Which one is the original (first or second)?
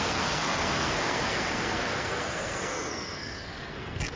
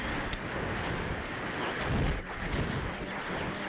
second